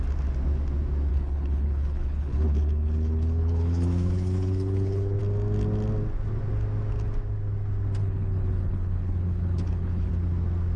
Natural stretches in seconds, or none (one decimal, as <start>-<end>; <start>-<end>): 0.0-1.1; 5.2-8.0; 10.1-10.8